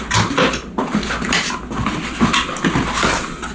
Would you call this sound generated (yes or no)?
no